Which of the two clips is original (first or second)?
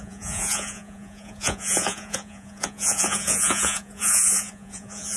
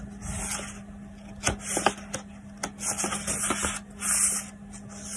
second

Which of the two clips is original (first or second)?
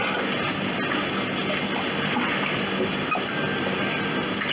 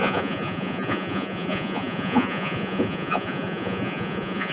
first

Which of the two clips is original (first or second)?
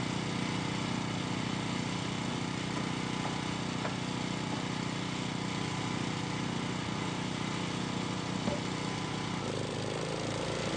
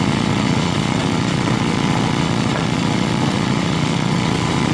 first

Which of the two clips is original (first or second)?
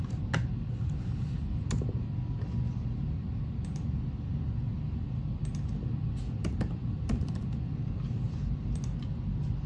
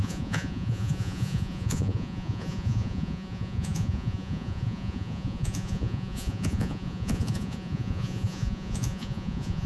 first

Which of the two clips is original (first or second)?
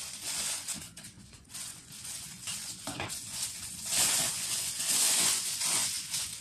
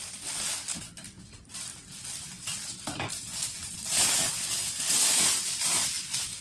second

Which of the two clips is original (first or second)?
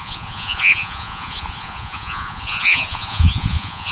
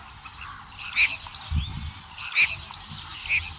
second